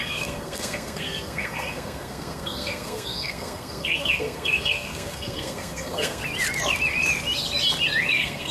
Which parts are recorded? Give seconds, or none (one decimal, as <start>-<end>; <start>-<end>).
6.2-8.1